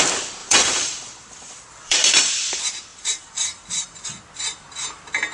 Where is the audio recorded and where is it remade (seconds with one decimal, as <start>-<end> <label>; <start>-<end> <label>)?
0.0-0.4 recorded; 0.4-2.3 remade; 2.3-2.9 recorded; 2.9-3.9 remade; 3.9-5.3 recorded